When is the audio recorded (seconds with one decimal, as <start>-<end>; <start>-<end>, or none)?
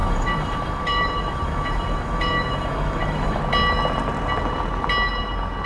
3.4-5.7